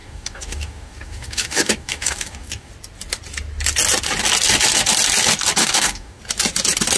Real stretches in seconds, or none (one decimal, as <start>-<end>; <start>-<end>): 2.7-5.6; 6.2-7.0

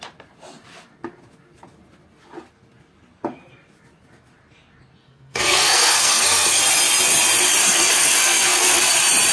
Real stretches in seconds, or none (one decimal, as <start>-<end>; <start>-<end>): 0.0-5.0; 6.6-7.6; 8.9-9.3

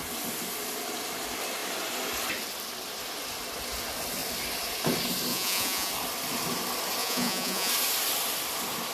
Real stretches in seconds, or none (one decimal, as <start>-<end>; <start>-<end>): 0.0-5.3; 5.9-7.0; 7.7-8.9

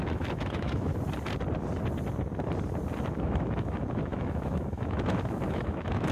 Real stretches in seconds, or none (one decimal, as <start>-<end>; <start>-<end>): 0.9-3.1

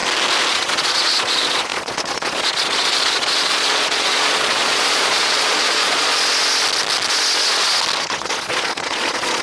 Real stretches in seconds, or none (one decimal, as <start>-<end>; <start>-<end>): 0.0-0.5; 6.1-8.0

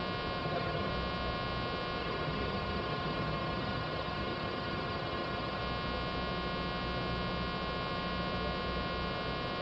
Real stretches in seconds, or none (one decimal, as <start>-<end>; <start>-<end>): 0.0-0.4; 0.9-2.0; 5.6-9.6

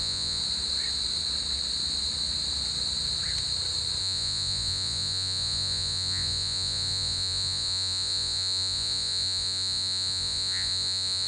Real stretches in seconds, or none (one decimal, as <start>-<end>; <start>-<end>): 0.4-4.0

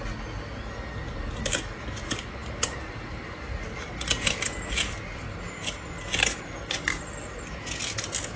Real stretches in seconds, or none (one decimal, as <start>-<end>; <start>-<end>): 0.0-8.4